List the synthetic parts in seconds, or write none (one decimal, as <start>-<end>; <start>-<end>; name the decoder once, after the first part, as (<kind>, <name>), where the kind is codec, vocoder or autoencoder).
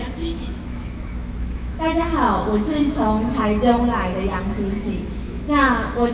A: 0.0-3.3 (autoencoder, DAC-VAE); 4.4-6.1